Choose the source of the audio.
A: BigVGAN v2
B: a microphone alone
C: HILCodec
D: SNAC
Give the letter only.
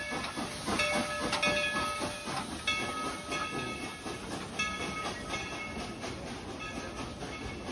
B